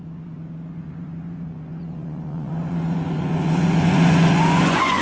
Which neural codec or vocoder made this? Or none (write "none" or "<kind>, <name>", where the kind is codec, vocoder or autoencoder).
vocoder, Vocos